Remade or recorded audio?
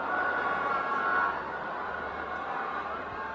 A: remade